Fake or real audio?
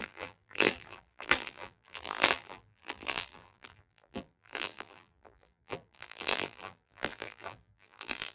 fake